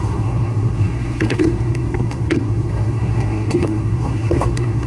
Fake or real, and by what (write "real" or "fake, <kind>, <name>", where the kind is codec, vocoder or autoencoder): fake, codec, SNAC